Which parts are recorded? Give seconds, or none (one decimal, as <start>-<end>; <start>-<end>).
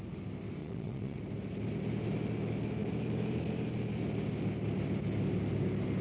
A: 0.0-0.6; 1.2-6.0